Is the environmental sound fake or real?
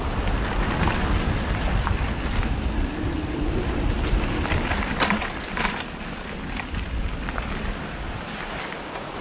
real